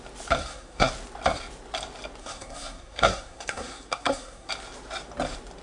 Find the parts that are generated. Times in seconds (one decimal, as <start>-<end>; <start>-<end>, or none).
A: 0.4-0.9; 2.2-4.5